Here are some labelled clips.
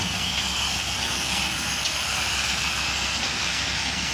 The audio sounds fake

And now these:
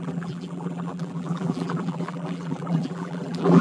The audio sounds fake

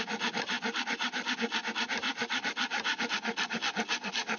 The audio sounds real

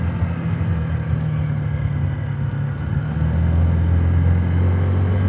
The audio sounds real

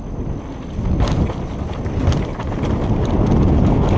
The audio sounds real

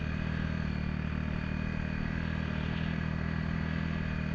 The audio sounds real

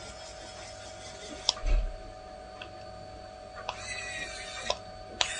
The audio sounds real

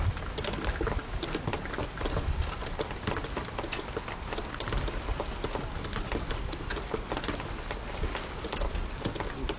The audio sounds real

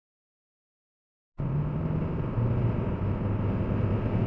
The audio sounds real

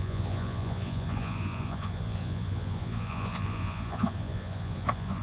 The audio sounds fake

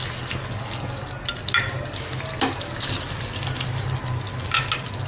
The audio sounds real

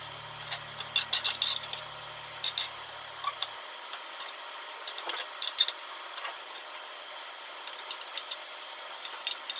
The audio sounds real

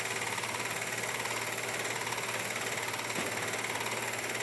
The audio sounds real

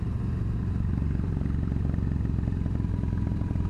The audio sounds fake